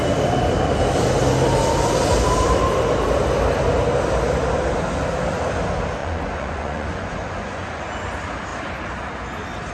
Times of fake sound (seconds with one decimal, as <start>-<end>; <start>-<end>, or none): 6.0-7.8